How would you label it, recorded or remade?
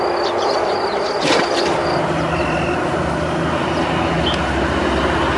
recorded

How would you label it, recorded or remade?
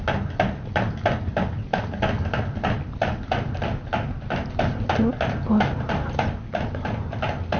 recorded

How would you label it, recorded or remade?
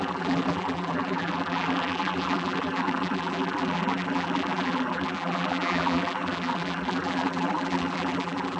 remade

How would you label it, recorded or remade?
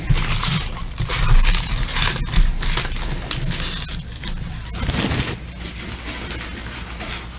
recorded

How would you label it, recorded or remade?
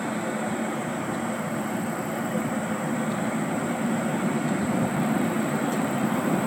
remade